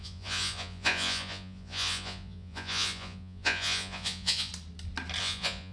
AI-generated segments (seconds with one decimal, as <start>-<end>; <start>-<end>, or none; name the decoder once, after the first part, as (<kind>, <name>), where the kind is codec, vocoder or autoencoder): 0.0-4.5 (vocoder, Vocos); 5.2-5.7